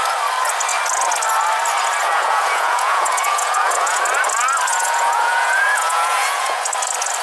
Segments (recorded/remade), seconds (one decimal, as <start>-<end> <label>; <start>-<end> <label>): 0.0-2.0 recorded; 2.0-4.0 remade; 4.0-4.7 recorded; 4.7-6.7 remade; 6.7-7.2 recorded

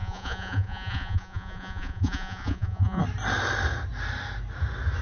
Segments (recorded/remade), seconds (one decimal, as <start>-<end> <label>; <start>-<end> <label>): 0.0-3.0 remade; 3.0-5.0 recorded

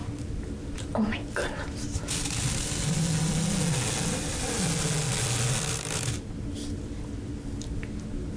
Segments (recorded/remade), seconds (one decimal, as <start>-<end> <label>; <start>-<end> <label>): 0.0-8.4 recorded

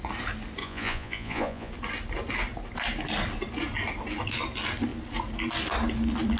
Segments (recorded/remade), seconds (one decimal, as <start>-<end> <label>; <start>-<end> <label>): 0.0-0.6 recorded; 0.6-1.7 remade; 1.7-6.4 recorded

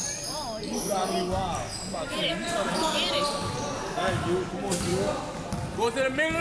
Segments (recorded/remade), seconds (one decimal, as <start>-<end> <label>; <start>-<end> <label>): 0.0-6.4 recorded

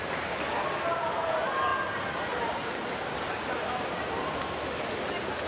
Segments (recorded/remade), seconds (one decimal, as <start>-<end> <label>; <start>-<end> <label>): 0.0-5.5 recorded